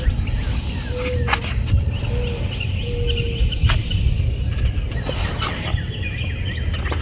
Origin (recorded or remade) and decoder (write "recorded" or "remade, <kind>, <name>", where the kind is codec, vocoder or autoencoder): recorded